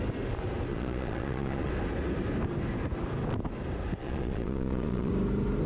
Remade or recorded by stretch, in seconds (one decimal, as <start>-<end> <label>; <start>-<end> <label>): 0.0-0.7 recorded; 0.7-1.7 remade; 1.7-4.0 recorded; 4.0-5.1 remade; 5.1-5.7 recorded